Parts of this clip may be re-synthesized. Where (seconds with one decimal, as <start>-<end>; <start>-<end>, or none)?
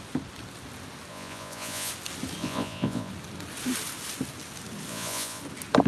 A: 1.1-1.9; 2.4-3.1; 4.9-5.4